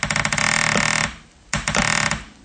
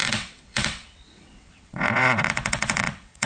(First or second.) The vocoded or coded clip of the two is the second